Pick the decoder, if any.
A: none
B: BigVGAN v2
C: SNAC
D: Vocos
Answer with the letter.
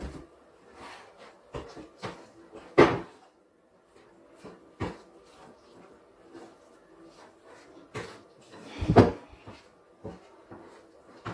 A